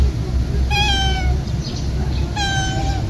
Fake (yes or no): no